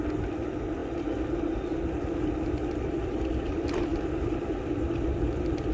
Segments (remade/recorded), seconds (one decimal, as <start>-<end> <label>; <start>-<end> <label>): 0.0-5.7 recorded